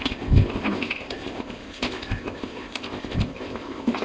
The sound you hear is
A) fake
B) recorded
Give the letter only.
A